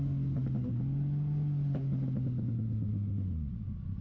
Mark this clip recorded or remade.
recorded